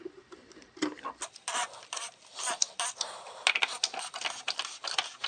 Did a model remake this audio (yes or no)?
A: no